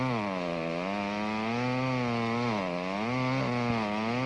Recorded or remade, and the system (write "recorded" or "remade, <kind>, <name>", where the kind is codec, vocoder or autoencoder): recorded